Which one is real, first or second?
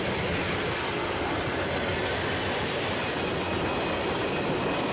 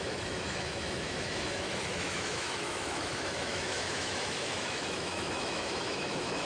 first